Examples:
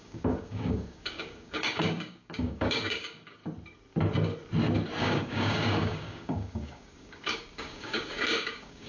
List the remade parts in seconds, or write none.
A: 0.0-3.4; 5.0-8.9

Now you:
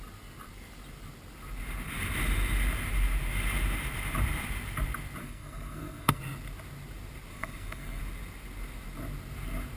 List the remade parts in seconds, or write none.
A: 5.2-6.2; 7.3-8.0

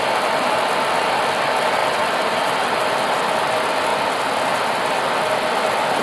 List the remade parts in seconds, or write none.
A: none

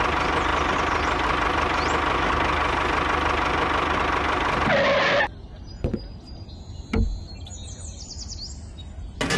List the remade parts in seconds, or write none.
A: none